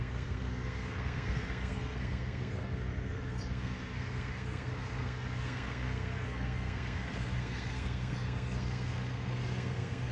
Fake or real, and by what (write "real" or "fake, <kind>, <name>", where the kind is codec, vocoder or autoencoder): fake, codec, SNAC